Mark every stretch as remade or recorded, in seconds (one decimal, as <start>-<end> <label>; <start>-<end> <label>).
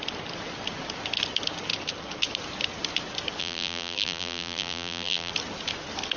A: 0.0-3.4 recorded; 3.4-5.3 remade; 5.3-6.2 recorded